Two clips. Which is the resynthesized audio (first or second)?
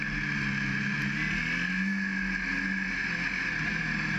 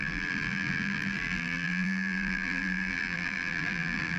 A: second